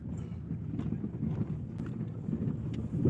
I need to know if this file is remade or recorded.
recorded